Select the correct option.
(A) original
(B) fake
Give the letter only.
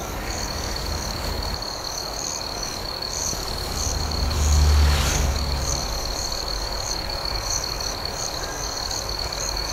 B